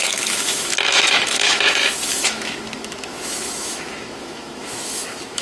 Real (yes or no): no